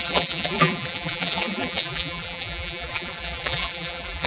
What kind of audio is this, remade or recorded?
remade